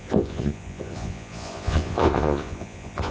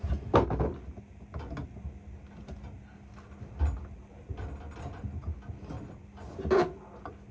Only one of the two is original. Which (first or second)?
second